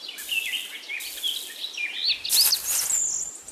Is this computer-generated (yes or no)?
no